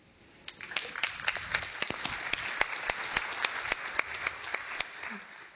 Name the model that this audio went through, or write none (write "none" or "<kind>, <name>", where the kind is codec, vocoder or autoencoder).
none